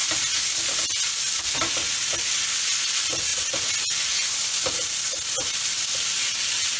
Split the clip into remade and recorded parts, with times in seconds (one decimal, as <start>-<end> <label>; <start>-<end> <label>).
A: 0.0-6.8 recorded

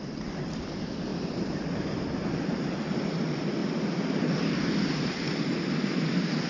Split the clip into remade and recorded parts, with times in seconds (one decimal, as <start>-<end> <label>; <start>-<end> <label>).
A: 0.0-6.5 remade

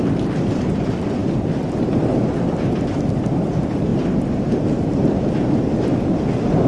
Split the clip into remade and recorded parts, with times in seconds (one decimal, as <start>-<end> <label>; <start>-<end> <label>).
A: 0.0-2.1 remade; 2.1-3.1 recorded; 3.1-3.9 remade; 3.9-6.7 recorded

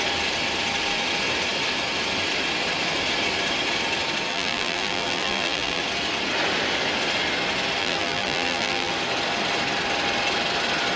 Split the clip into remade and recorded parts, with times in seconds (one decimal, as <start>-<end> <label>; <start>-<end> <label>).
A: 0.0-4.3 recorded; 4.3-5.8 remade; 5.8-7.8 recorded; 7.8-8.9 remade; 8.9-11.0 recorded

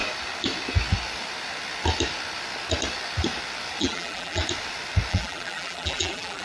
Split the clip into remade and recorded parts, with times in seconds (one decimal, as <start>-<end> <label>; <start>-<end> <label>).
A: 0.0-3.8 recorded; 3.8-4.4 remade; 4.4-5.1 recorded; 5.1-6.4 remade